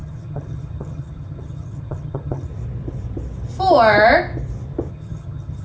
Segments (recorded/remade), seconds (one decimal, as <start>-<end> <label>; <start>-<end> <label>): 0.0-2.5 remade; 2.5-4.9 recorded; 4.9-5.6 remade